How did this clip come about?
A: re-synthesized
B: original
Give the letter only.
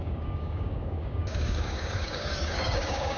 A